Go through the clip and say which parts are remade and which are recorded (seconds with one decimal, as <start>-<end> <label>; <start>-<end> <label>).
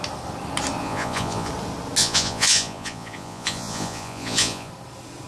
0.0-0.8 recorded; 0.8-1.5 remade; 1.5-2.0 recorded; 2.0-4.7 remade; 4.7-5.3 recorded